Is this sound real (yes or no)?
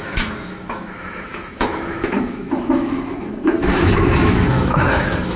no